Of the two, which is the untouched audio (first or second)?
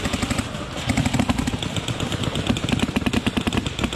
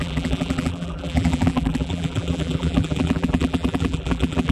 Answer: first